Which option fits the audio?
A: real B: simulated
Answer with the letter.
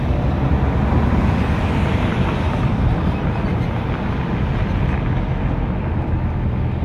A